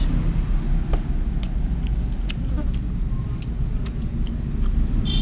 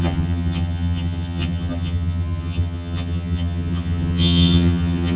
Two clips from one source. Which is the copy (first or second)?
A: second